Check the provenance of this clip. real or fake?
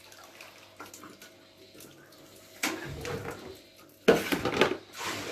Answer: real